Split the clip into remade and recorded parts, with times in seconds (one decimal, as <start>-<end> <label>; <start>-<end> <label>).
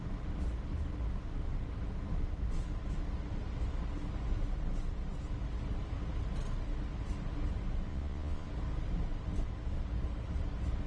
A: 0.0-7.9 recorded; 7.9-8.5 remade; 8.5-10.9 recorded